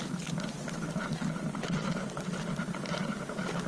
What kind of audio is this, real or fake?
real